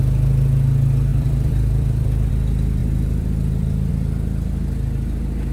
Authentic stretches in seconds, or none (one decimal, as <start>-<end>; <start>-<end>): 0.0-1.1; 2.3-2.8; 3.9-5.5